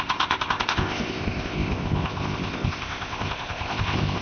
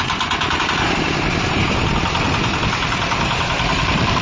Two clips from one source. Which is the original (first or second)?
second